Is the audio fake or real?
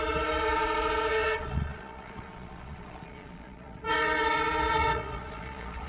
fake